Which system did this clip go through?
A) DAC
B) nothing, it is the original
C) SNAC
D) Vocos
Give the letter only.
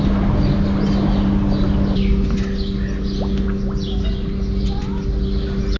B